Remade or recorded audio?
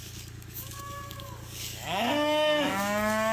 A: remade